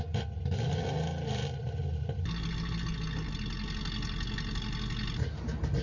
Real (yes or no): yes